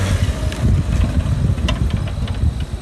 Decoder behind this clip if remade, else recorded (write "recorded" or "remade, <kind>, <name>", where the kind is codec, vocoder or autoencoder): recorded